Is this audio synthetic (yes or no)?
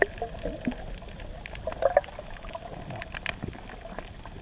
no